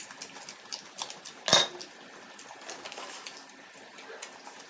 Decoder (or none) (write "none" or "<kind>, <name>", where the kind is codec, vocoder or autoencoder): none